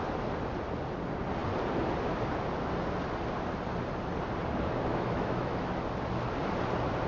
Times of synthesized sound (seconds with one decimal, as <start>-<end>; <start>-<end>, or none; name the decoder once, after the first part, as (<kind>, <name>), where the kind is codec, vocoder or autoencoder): 4.9-5.7 (autoencoder, DAC-VAE)